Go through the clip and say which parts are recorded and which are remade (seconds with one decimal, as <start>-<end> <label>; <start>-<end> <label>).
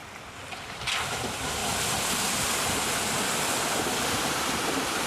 0.0-0.9 remade; 0.9-1.6 recorded; 1.6-5.1 remade